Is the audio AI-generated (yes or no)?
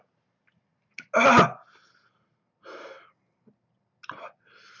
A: no